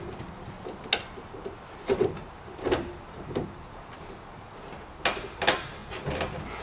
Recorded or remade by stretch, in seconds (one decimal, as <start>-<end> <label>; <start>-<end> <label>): 0.0-1.0 recorded; 1.0-4.1 remade; 4.1-6.6 recorded